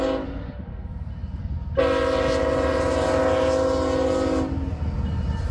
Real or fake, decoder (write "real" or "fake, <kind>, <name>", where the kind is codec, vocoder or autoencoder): real